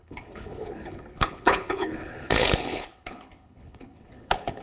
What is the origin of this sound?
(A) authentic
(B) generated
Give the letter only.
B